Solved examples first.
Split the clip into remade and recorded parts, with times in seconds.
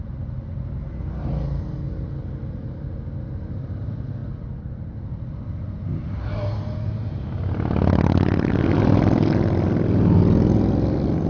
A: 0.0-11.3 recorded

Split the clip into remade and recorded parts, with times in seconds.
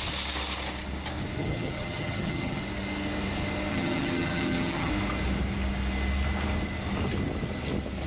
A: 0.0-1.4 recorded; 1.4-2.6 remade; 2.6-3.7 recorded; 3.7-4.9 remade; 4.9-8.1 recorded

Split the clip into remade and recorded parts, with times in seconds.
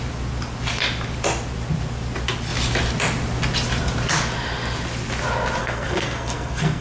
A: 0.0-5.6 recorded; 5.6-6.8 remade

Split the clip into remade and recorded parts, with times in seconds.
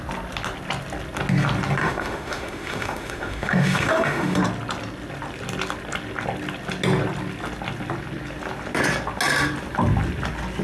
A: 0.0-1.8 recorded; 1.8-4.4 remade; 4.4-10.6 recorded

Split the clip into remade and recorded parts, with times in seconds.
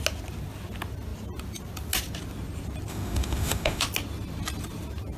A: 0.0-2.9 recorded; 2.9-3.8 remade; 3.8-5.2 recorded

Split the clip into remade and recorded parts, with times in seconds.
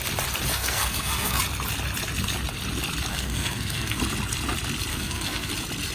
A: 0.0-0.5 recorded; 0.5-1.4 remade; 1.4-3.1 recorded; 3.1-4.0 remade; 4.0-4.9 recorded; 4.9-5.5 remade; 5.5-5.9 recorded